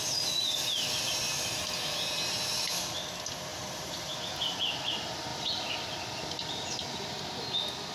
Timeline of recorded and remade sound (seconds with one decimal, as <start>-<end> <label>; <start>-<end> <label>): 0.0-3.5 recorded; 3.5-4.2 remade; 4.2-5.3 recorded; 5.3-5.9 remade; 5.9-7.9 recorded